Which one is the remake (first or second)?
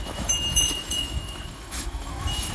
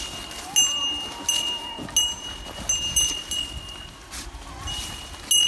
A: first